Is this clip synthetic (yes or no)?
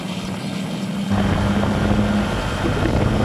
no